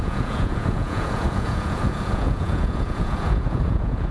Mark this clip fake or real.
fake